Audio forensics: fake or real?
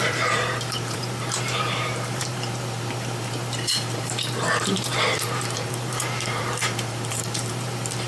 fake